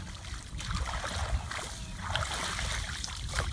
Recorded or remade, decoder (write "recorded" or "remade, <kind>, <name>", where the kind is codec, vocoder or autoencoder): remade, vocoder, BigVGAN v2